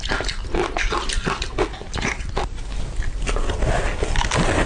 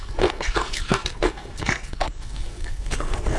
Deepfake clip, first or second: second